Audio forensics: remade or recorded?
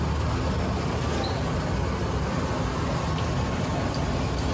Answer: recorded